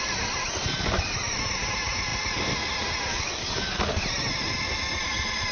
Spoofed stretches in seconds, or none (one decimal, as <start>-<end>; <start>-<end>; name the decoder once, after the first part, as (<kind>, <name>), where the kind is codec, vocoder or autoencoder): 3.1-4.0 (codec, DAC)